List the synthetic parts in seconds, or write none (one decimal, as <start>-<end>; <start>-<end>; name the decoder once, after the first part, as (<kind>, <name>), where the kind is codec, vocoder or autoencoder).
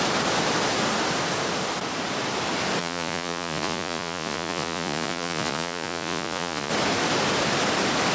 2.8-6.7 (vocoder, Vocos)